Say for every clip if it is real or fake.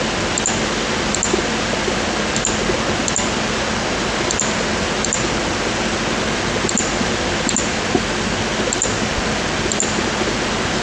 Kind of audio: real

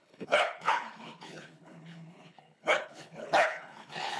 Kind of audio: fake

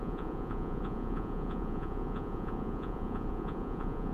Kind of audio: fake